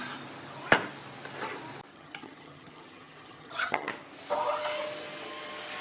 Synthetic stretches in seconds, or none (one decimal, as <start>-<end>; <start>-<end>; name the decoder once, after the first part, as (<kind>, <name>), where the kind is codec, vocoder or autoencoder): 1.9-3.9 (vocoder, HiFi-GAN)